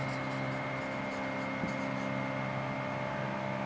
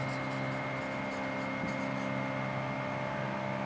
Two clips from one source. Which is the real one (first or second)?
second